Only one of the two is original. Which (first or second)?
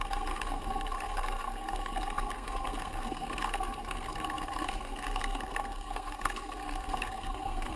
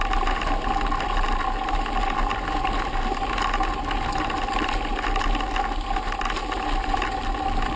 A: second